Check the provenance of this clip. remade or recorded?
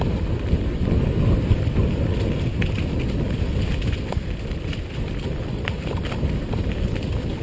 recorded